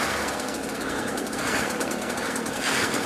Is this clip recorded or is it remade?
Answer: remade